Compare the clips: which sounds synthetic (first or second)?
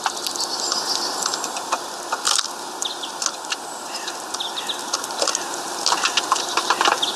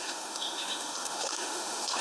second